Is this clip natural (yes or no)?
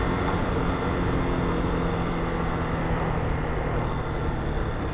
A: yes